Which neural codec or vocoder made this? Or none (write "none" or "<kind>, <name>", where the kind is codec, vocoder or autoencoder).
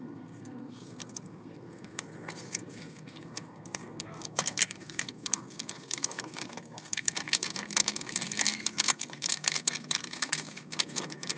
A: codec, SNAC